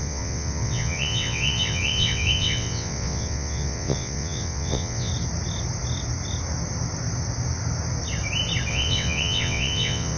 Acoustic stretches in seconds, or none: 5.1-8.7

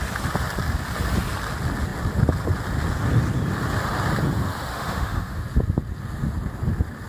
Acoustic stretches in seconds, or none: 0.0-4.7; 5.4-7.1

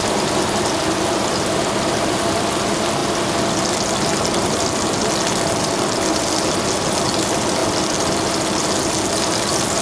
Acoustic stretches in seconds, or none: 0.0-9.8

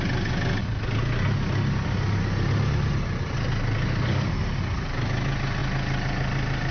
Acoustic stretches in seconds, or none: 0.0-6.7

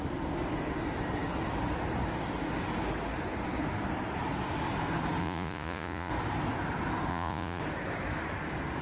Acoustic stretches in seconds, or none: 0.0-5.2; 6.1-7.1; 7.6-8.8